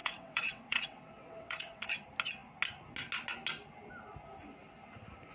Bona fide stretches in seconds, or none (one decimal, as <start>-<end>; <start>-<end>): 1.8-5.3